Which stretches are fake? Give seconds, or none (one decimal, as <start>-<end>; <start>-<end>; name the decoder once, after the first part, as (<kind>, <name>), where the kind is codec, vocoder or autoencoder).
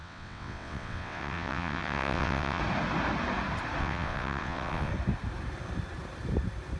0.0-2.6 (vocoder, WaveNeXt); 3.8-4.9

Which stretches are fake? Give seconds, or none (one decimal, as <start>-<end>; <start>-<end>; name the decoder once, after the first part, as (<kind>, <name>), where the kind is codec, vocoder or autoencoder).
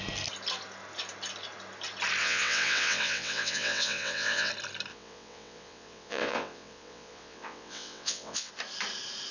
2.2-4.5 (vocoder, WaveNeXt); 4.9-8.5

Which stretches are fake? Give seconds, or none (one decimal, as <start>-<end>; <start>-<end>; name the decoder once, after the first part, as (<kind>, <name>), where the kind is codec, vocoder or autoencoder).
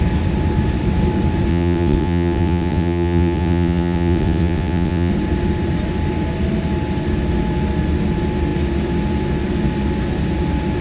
1.5-5.1 (vocoder, WaveNeXt)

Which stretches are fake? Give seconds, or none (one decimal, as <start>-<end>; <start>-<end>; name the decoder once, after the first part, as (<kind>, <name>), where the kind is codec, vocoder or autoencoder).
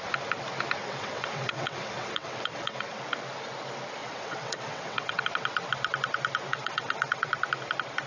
0.8-3.0 (vocoder, WaveNeXt); 4.0-5.2; 6.5-7.3